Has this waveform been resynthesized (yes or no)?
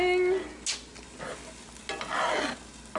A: no